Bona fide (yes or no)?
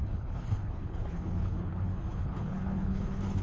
no